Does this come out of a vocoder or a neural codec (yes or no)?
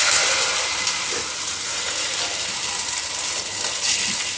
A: no